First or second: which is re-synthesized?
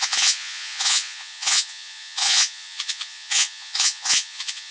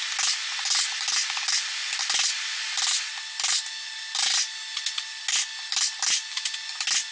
first